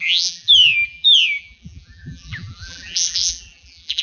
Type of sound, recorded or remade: remade